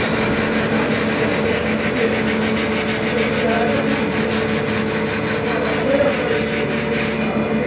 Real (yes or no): yes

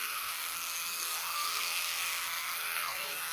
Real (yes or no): no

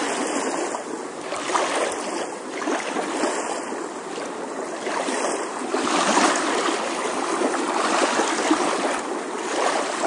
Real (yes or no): yes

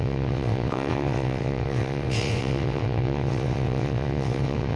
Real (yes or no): no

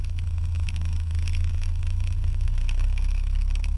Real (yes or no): no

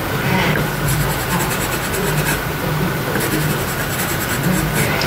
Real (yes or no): yes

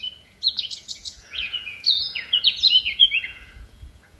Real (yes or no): no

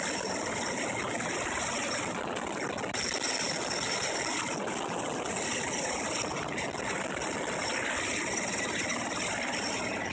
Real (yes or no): yes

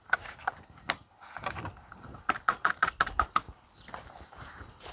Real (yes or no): no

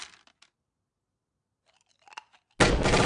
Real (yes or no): yes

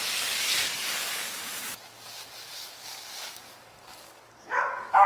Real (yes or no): no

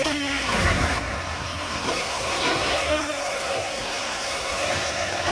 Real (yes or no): no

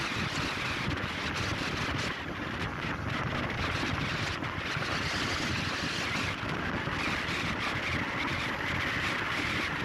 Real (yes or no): yes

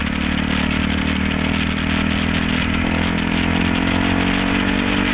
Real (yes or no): yes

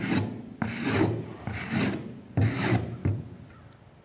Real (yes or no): yes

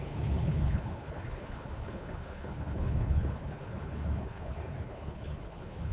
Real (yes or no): no